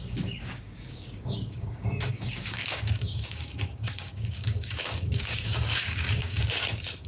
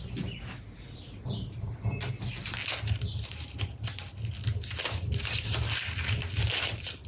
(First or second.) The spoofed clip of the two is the first